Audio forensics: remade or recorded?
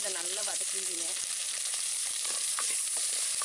remade